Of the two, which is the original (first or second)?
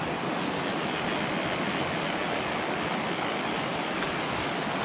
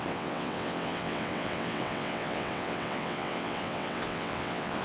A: first